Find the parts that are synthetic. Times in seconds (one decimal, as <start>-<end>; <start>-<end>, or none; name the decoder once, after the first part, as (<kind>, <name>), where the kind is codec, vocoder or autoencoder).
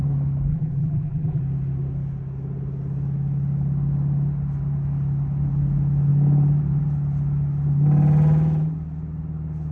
0.5-1.4 (vocoder, BigVGAN v2)